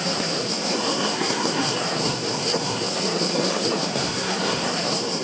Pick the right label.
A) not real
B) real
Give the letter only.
A